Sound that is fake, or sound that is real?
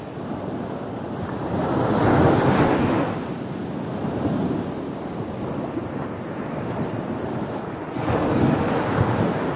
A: real